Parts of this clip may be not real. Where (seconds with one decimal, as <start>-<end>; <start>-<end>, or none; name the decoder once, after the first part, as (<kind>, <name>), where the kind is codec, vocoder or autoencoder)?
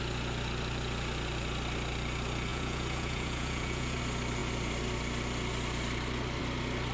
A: 2.5-4.0 (vocoder, Vocos)